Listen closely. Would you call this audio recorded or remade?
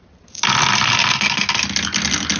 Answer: recorded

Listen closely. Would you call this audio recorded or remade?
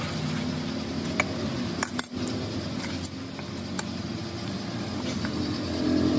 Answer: recorded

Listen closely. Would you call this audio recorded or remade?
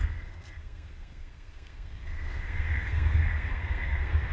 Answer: remade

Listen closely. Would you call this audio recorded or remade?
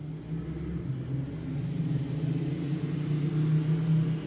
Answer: recorded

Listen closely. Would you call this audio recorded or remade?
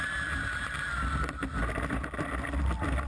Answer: recorded